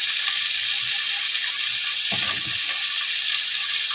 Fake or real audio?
real